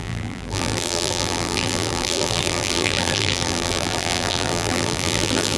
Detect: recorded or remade remade